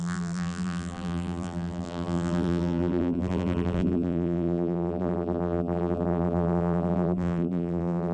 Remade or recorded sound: remade